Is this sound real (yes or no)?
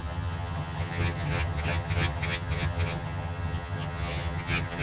no